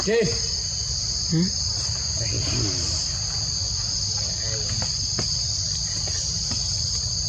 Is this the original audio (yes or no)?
no